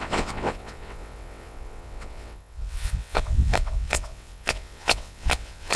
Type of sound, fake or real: fake